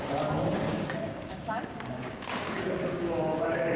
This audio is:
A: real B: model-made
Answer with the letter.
B